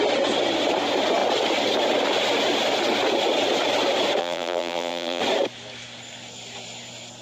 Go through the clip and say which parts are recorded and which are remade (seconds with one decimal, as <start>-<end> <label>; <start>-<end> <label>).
0.0-4.2 recorded; 4.2-5.2 remade; 5.2-7.2 recorded